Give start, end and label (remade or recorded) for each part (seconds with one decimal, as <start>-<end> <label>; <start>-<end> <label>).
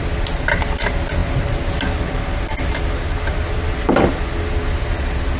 0.0-5.4 recorded